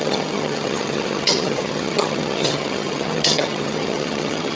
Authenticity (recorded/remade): remade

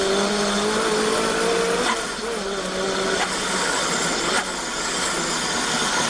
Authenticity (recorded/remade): recorded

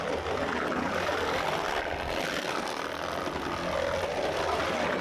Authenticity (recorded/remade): recorded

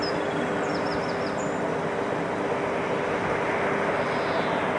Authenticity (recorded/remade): recorded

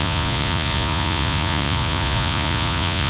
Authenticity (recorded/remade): remade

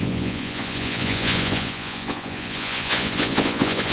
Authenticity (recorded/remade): remade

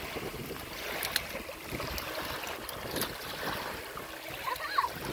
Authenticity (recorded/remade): recorded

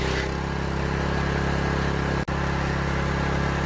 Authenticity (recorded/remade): recorded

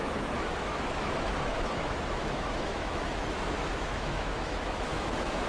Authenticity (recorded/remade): remade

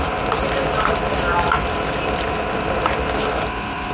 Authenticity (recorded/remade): remade